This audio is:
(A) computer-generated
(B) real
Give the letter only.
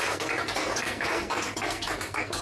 A